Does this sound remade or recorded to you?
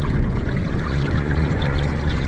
remade